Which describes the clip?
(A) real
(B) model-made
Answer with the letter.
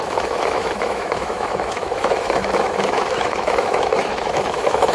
B